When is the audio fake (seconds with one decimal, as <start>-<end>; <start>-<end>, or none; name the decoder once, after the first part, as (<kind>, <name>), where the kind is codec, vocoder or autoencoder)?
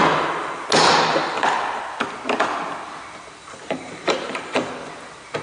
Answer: 0.0-0.6 (vocoder, BigVGAN v2); 1.1-1.8; 3.4-4.7